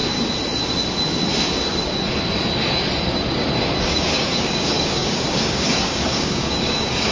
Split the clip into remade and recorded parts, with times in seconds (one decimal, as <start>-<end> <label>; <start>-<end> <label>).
0.0-3.8 recorded; 3.8-7.1 remade